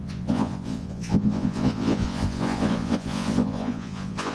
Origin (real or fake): fake